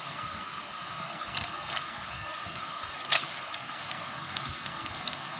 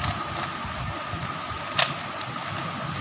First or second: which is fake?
first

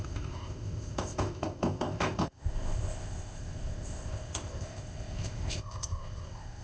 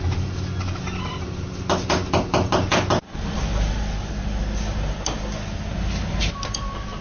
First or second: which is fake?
first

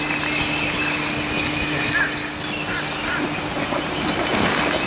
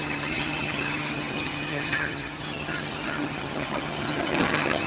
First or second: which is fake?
second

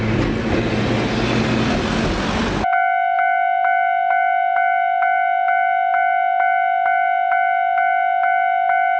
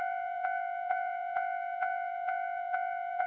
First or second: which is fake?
second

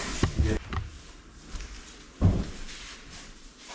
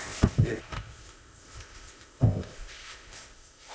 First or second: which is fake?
second